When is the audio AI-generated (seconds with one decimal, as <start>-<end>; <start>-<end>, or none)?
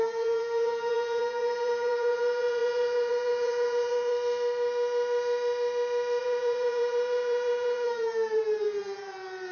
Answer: 0.0-4.1; 6.2-9.5